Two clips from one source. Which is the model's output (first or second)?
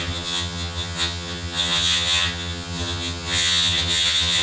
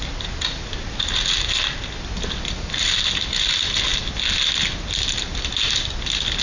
first